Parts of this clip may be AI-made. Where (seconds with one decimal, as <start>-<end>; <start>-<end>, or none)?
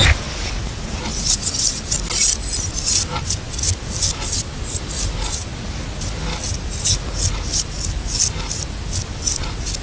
none